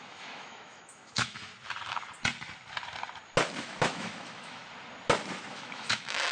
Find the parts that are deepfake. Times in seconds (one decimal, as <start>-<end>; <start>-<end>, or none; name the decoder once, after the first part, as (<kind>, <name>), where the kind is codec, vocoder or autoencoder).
0.0-1.5 (autoencoder, DAC-VAE); 3.6-4.6; 5.5-6.3

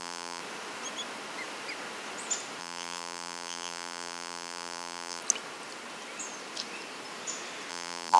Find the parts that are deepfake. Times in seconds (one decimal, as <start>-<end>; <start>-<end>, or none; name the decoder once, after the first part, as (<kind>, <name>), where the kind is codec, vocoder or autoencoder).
0.0-0.4 (vocoder, BigVGAN v2); 2.6-5.2; 7.7-8.2

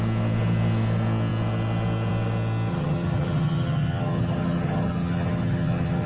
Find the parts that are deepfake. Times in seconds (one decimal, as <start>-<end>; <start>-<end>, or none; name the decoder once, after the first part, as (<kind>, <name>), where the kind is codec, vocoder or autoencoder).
2.7-6.1 (vocoder, HiFi-GAN)